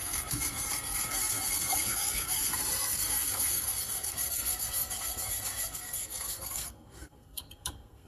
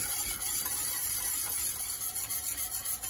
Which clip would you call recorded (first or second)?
second